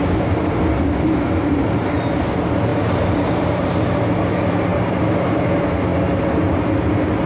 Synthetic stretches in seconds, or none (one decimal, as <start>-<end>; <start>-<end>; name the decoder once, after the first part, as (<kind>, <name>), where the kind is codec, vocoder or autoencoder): none